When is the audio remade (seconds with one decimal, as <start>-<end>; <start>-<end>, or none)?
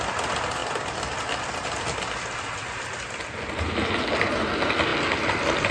none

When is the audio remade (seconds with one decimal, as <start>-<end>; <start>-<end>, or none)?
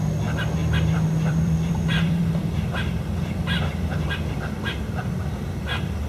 0.6-4.2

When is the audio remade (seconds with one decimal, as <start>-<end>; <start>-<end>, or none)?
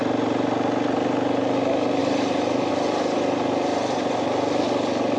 2.0-2.7; 3.7-4.6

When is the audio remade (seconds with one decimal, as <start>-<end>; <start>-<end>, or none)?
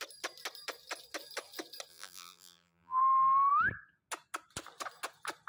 1.9-3.0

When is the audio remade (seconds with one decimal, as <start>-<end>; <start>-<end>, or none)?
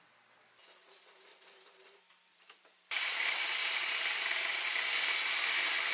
1.3-4.8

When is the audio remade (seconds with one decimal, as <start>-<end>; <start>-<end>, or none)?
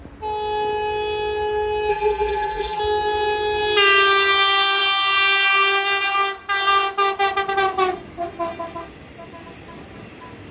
1.9-2.8